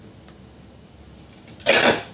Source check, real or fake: real